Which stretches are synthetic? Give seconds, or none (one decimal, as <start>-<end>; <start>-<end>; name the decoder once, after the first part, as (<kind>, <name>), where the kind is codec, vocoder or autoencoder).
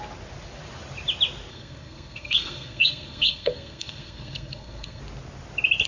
1.5-5.0 (codec, SNAC)